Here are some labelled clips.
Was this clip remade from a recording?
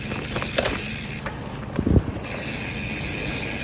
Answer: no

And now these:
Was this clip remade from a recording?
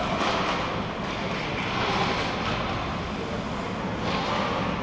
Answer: no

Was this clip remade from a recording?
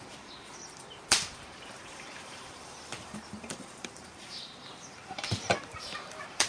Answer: yes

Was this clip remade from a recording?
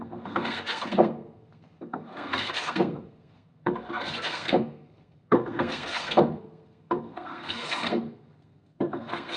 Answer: yes